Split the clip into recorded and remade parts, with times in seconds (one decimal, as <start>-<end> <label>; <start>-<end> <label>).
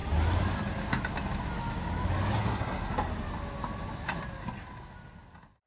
0.0-2.4 recorded; 2.4-2.9 remade; 2.9-5.7 recorded